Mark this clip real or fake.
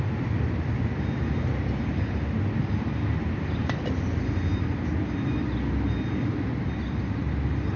real